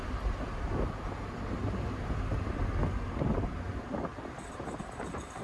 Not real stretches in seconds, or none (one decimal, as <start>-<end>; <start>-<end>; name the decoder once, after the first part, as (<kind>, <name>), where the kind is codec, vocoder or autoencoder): none